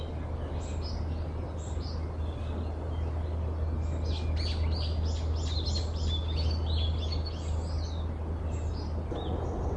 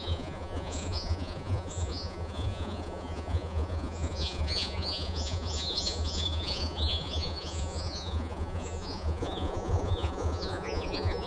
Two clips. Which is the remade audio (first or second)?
second